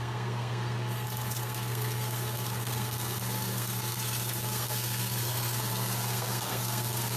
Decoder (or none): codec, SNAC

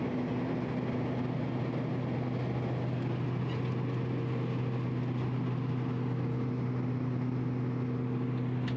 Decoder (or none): none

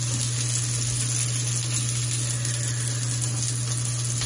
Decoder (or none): none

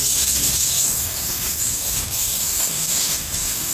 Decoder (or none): codec, DAC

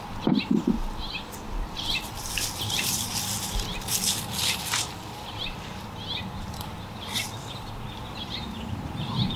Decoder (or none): vocoder, BigVGAN v2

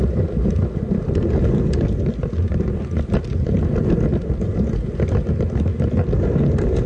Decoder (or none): none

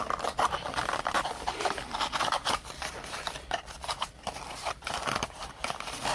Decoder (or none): vocoder, BigVGAN v2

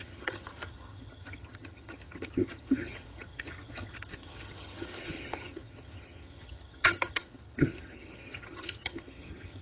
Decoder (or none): vocoder, HiFi-GAN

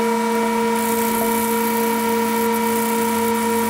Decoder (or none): none